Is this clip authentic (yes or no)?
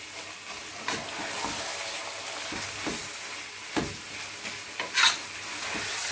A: yes